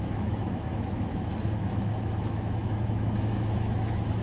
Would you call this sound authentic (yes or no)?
no